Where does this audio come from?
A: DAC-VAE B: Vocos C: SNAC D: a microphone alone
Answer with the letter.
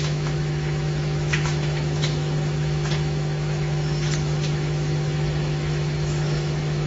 A